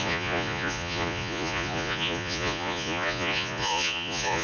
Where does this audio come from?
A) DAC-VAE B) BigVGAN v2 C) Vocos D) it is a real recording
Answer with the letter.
C